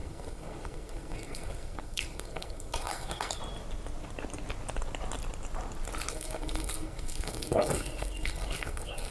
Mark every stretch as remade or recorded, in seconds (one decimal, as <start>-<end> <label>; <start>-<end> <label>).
0.0-3.4 remade; 3.4-6.1 recorded; 6.1-9.1 remade